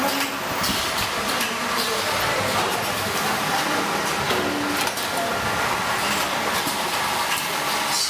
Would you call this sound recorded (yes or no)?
yes